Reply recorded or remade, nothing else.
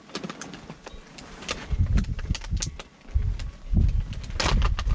recorded